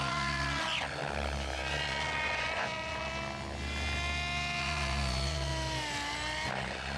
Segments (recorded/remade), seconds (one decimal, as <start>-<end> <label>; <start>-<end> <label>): 0.0-1.0 remade; 1.0-1.7 recorded; 1.7-3.1 remade; 3.1-4.6 recorded; 4.6-5.5 remade; 5.5-6.6 recorded; 6.6-7.0 remade